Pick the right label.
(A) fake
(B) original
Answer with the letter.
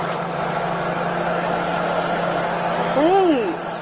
B